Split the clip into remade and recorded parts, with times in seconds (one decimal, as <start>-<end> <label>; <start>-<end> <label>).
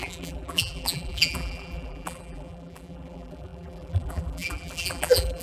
0.0-5.4 remade